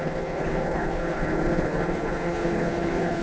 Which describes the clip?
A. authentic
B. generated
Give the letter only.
B